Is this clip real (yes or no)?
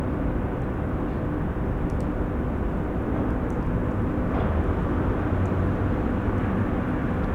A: yes